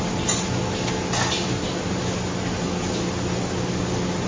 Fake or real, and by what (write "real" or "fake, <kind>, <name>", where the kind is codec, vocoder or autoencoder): real